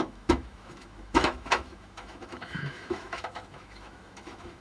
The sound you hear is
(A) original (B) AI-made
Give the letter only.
B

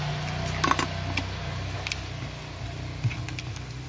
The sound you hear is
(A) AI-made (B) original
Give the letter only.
B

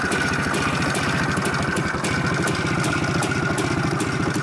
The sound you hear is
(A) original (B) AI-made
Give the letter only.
A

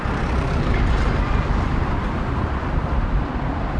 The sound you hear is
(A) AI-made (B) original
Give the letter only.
B